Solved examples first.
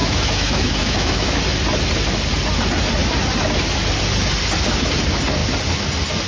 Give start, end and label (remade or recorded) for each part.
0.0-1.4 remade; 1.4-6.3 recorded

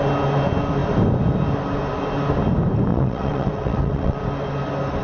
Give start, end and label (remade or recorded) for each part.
0.0-2.9 recorded; 2.9-4.2 remade; 4.2-5.0 recorded

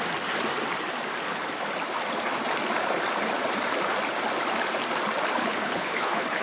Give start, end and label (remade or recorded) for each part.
0.0-5.4 recorded; 5.4-6.4 remade

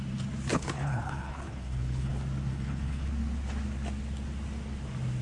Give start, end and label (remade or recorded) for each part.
0.0-0.5 recorded; 0.5-2.1 remade; 2.1-2.5 recorded; 2.5-3.1 remade; 3.1-5.2 recorded

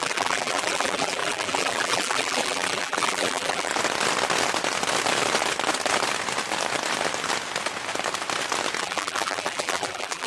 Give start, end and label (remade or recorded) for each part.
0.0-3.7 remade; 3.7-8.8 recorded; 8.8-10.3 remade

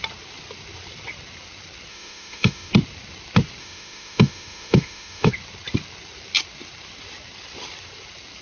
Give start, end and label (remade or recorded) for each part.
0.0-1.9 recorded; 1.9-2.7 remade; 2.7-3.6 recorded; 3.6-5.3 remade; 5.3-8.4 recorded